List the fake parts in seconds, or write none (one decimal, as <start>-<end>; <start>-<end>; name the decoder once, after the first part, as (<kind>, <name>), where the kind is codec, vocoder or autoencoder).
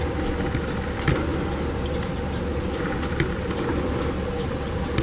none